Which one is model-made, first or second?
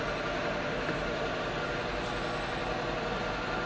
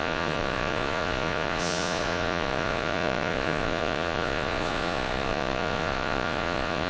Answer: second